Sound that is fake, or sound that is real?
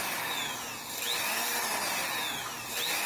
real